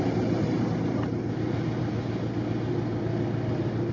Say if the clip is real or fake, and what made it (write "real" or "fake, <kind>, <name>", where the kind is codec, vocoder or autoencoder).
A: real